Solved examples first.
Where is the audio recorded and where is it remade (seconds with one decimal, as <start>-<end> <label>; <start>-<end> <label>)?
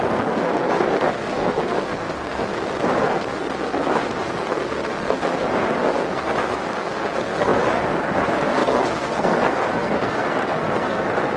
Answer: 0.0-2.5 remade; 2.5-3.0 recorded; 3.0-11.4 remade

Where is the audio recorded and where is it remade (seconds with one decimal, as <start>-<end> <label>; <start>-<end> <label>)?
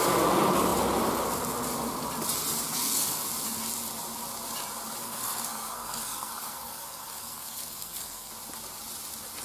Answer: 0.0-2.7 recorded; 2.7-3.3 remade; 3.3-5.0 recorded; 5.0-8.3 remade; 8.3-9.4 recorded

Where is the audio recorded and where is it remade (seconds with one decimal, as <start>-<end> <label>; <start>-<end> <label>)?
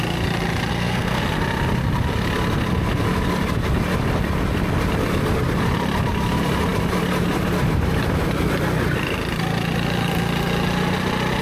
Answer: 0.0-0.7 recorded; 0.7-1.2 remade; 1.2-11.4 recorded